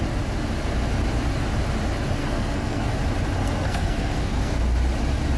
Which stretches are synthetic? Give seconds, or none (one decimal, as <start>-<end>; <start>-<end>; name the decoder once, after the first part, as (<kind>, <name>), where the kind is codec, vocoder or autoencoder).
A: 2.2-2.9 (codec, SNAC); 3.4-4.6